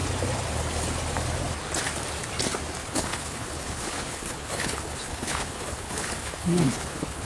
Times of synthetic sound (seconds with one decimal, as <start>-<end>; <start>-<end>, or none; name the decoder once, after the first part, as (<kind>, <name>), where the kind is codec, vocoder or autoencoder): 2.8-7.3 (codec, HILCodec)

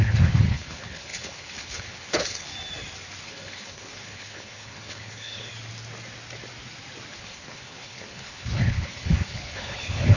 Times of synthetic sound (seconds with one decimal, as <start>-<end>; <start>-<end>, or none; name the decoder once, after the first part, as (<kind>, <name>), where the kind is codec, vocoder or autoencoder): 0.0-2.5 (codec, HILCodec); 3.2-5.5; 7.1-10.2

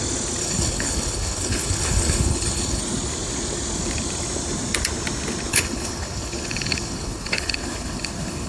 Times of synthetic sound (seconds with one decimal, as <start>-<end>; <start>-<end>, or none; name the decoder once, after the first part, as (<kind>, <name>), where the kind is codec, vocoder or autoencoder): 0.4-2.8 (codec, HILCodec); 5.5-8.5